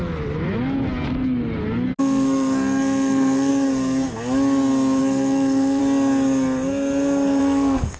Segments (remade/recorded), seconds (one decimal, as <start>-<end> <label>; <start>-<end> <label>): 0.0-2.0 recorded; 2.0-3.5 remade; 3.5-5.0 recorded; 5.0-5.8 remade; 5.8-7.4 recorded; 7.4-8.0 remade